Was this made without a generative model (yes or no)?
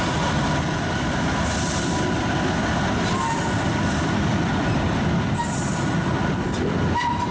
no